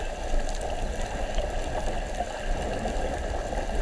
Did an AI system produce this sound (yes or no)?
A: no